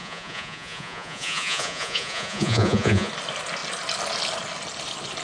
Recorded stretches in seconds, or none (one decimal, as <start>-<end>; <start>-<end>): 3.1-5.2